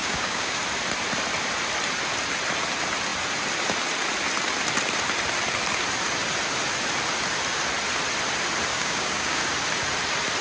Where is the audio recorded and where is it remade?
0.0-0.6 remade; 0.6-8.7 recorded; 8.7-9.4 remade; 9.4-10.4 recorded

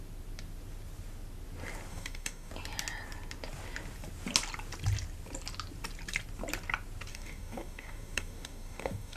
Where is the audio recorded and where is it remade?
0.0-1.9 recorded; 1.9-2.5 remade; 2.5-7.1 recorded; 7.1-9.2 remade

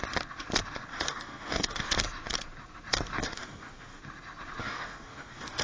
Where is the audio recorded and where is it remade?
0.0-0.9 recorded; 0.9-1.9 remade; 1.9-3.2 recorded; 3.2-4.0 remade; 4.0-4.6 recorded; 4.6-5.6 remade